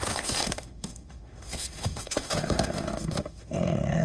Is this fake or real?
fake